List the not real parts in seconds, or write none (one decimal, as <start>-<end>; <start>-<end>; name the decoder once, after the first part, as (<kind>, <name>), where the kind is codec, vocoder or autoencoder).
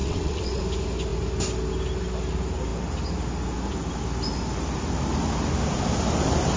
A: 0.0-0.6 (vocoder, WaveNeXt)